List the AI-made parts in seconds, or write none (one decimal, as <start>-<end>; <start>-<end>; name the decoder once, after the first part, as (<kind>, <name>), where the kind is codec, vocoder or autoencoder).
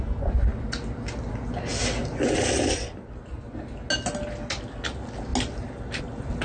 none